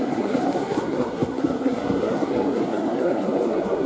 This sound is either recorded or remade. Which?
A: remade